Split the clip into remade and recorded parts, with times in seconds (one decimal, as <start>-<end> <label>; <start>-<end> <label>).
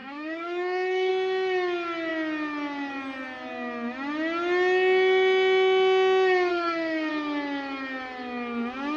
0.0-1.1 remade; 1.1-6.5 recorded; 6.5-7.1 remade; 7.1-9.0 recorded